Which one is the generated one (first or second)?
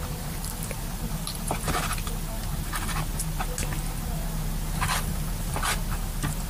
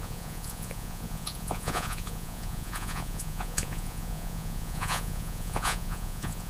second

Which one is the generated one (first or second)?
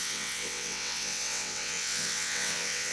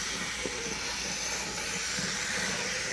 first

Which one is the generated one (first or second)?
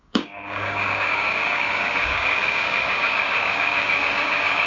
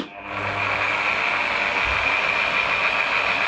first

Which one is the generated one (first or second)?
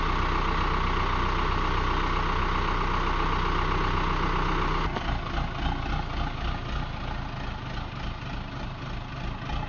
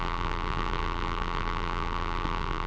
second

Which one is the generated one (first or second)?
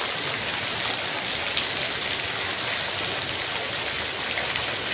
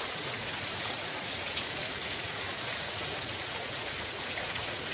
second